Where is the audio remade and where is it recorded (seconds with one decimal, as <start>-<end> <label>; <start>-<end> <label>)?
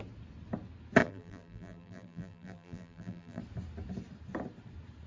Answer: 0.0-1.0 recorded; 1.0-3.4 remade; 3.4-5.1 recorded